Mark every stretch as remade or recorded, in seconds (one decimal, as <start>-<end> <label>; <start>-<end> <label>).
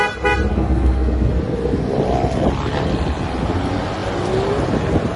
0.0-0.5 recorded; 0.5-1.3 remade; 1.3-5.2 recorded